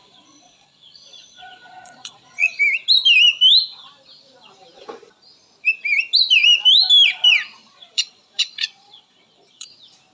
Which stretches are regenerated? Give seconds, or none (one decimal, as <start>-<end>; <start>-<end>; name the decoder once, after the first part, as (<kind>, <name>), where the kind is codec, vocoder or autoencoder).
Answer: 0.0-2.6 (vocoder, Vocos); 7.6-9.7